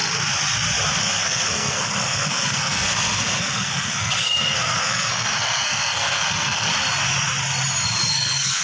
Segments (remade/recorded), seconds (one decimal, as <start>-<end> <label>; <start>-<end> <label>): 0.0-1.0 recorded; 1.0-6.7 remade; 6.7-8.1 recorded; 8.1-8.6 remade